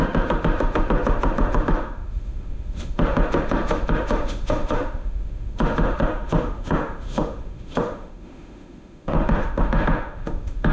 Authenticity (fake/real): fake